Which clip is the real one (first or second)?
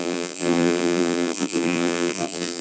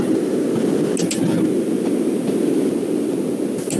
second